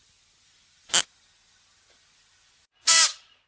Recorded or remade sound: recorded